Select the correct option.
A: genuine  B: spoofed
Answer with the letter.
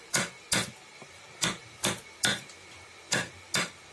A